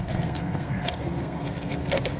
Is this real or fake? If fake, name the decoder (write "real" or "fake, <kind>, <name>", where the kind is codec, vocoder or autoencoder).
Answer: fake, codec, SNAC